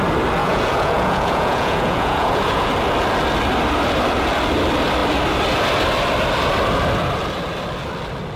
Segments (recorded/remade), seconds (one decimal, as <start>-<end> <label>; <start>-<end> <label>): 0.0-0.4 recorded; 0.4-2.7 remade; 2.7-8.4 recorded